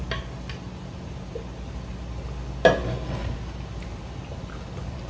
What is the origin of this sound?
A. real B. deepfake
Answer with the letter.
A